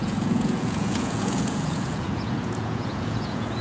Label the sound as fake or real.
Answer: fake